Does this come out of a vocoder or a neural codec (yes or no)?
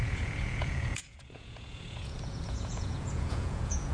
yes